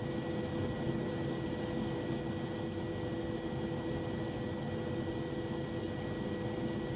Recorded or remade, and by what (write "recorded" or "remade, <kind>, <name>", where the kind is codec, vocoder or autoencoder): recorded